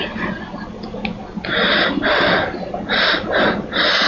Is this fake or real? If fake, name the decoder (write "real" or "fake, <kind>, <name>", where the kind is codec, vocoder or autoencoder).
real